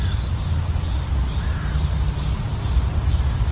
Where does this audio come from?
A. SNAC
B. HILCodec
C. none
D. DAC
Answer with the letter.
C